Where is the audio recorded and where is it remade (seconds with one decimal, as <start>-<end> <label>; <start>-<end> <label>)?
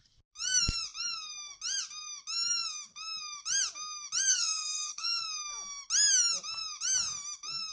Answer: 0.0-4.3 recorded; 4.3-5.2 remade; 5.2-7.7 recorded